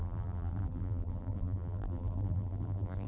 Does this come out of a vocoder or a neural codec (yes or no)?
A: yes